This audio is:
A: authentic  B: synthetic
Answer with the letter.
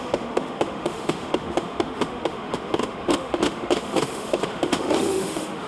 B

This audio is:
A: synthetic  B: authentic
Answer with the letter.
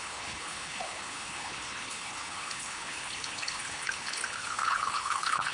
A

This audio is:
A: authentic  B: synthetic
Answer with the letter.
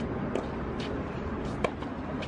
A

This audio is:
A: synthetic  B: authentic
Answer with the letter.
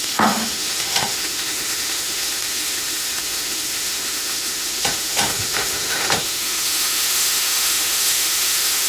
A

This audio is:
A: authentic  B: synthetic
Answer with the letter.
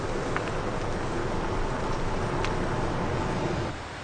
A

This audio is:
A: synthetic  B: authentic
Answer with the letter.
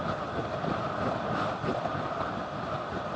B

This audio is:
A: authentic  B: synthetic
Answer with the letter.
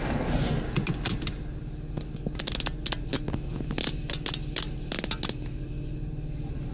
A